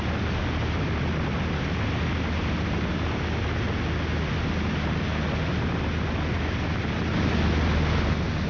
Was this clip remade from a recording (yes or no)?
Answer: no